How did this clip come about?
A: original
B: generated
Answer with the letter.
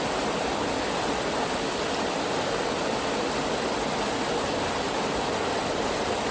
A